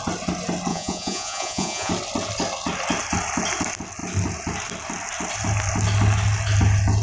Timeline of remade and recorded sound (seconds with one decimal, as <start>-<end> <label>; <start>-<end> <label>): 0.0-0.7 recorded; 0.7-1.9 remade; 1.9-7.0 recorded

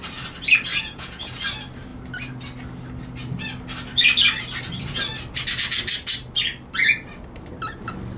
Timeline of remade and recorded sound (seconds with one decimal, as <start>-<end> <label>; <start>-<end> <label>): 0.0-0.7 recorded; 0.7-1.3 remade; 1.3-8.2 recorded

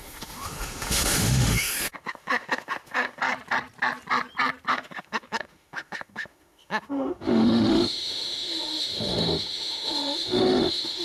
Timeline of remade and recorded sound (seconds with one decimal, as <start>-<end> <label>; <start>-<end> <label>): 0.0-3.2 remade; 3.2-4.7 recorded; 4.7-11.0 remade

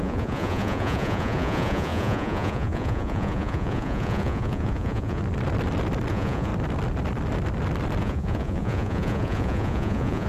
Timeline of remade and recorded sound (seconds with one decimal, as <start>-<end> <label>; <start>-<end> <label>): 0.0-5.2 remade; 5.2-6.1 recorded; 6.1-6.5 remade; 6.5-8.0 recorded; 8.0-10.3 remade

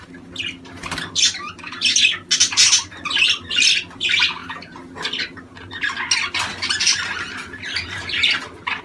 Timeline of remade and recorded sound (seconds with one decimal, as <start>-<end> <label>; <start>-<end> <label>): 0.0-8.8 recorded

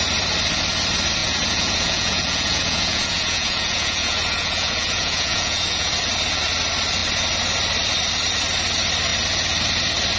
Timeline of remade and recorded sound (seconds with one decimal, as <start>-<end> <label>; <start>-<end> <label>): 0.0-1.2 recorded; 1.2-5.9 remade; 5.9-10.2 recorded

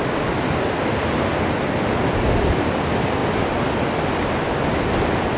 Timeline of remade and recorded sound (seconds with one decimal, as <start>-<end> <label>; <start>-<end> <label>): 0.0-5.4 recorded